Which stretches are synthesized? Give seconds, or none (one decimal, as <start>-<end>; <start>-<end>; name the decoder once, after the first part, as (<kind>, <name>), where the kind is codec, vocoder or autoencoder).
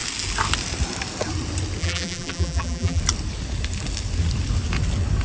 1.8-3.0 (vocoder, BigVGAN v2)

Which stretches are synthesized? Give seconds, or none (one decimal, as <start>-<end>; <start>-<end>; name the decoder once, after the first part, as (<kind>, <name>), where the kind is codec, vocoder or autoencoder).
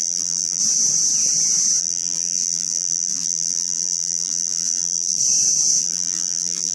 0.0-0.6 (vocoder, BigVGAN v2); 1.8-5.2; 5.8-6.7